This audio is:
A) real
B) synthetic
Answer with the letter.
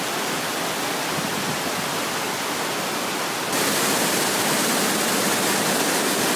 A